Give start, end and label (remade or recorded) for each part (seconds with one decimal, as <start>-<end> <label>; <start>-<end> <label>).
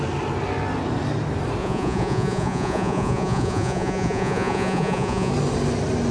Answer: 0.0-1.6 recorded; 1.6-5.3 remade; 5.3-6.1 recorded